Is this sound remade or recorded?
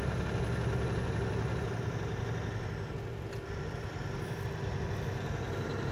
recorded